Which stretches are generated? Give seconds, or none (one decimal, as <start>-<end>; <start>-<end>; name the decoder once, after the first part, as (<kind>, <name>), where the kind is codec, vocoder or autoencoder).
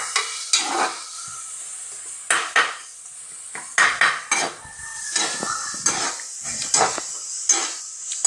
none